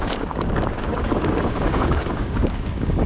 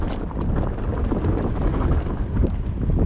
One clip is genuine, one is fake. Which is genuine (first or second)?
second